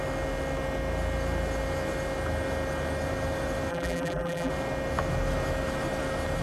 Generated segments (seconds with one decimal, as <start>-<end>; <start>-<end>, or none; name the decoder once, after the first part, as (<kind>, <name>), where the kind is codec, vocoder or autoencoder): 3.7-4.5 (vocoder, BigVGAN v2)